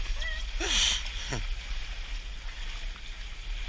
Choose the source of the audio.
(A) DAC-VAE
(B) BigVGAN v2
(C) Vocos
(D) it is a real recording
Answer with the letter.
D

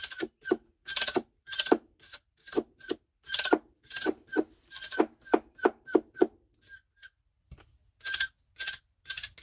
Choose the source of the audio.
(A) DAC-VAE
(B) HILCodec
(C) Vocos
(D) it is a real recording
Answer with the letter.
D